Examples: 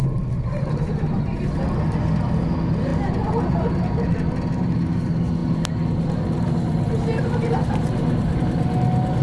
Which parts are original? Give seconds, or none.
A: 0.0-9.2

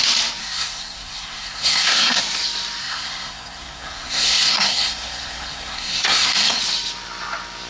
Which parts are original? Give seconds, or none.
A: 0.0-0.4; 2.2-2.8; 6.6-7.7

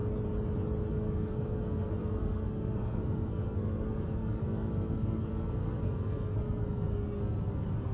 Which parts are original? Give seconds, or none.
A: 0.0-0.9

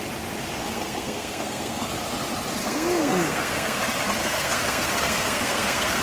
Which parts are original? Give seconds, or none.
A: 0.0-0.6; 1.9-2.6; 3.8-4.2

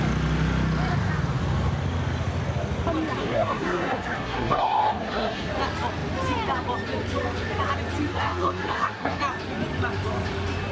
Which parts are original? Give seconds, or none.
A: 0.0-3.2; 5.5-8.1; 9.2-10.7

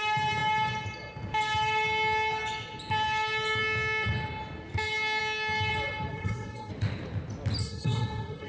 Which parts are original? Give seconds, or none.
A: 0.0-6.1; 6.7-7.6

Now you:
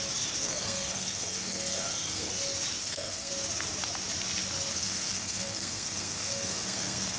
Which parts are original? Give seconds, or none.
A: 0.0-0.4; 2.3-2.8; 3.3-4.7